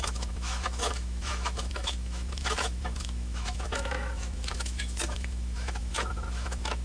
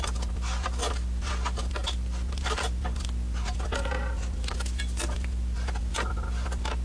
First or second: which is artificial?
first